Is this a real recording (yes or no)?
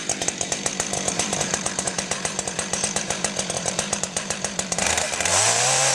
no